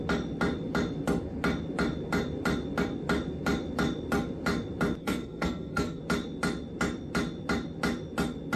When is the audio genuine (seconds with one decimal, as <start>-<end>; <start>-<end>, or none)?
0.0-5.0; 6.0-8.6